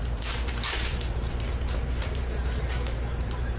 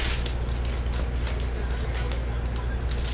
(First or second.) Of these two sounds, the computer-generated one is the first